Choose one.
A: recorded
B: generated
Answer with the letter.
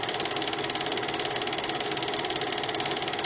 A